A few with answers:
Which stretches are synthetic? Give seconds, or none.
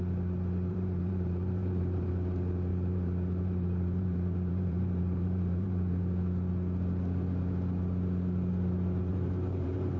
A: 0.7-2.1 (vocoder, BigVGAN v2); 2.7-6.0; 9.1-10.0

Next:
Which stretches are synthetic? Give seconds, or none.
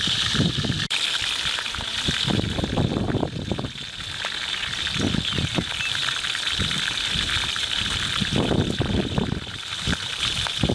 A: 0.0-1.9 (vocoder, BigVGAN v2); 5.5-10.7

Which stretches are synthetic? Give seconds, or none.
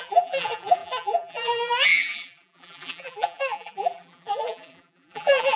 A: 0.0-5.6 (vocoder, BigVGAN v2)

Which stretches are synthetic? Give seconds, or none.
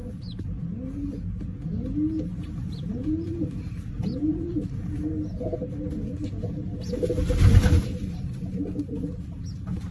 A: 0.0-0.6 (vocoder, BigVGAN v2); 2.4-5.1; 7.5-8.1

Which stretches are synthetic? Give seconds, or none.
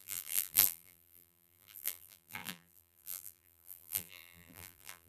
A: 0.0-5.1 (vocoder, BigVGAN v2)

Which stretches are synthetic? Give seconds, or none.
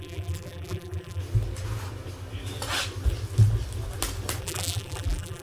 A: 0.0-1.2 (vocoder, BigVGAN v2); 4.4-5.4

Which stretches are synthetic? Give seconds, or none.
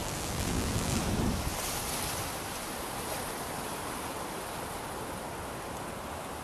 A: 0.0-1.0 (vocoder, BigVGAN v2)